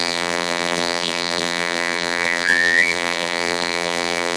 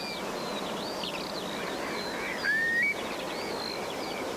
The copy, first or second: first